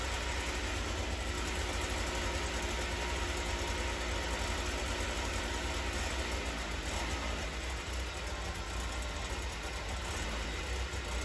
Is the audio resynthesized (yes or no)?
no